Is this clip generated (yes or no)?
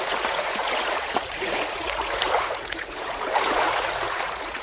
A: yes